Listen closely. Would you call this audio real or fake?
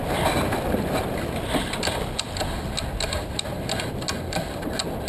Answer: real